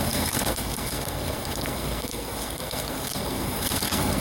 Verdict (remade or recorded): remade